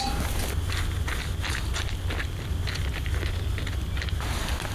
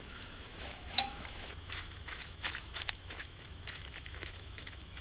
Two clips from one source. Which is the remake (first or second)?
second